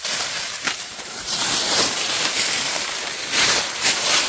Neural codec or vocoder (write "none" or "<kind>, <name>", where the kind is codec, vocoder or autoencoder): vocoder, BigVGAN v2